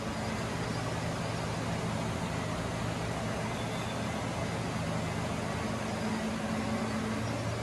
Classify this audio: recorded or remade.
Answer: recorded